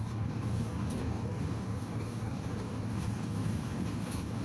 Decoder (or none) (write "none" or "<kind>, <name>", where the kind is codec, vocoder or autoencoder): codec, DAC